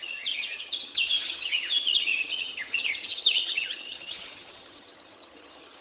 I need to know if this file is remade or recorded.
remade